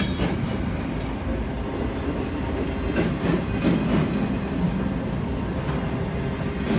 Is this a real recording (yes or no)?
yes